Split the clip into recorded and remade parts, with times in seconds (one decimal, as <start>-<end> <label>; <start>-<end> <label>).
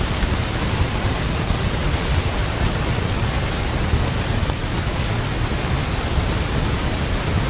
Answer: 0.0-7.5 recorded